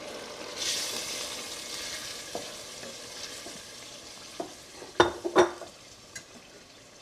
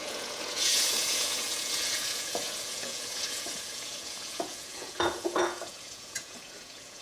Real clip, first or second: first